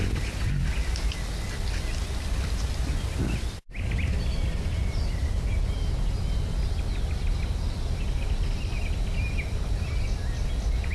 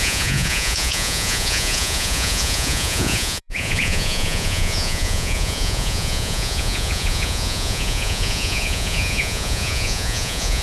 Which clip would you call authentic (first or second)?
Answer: first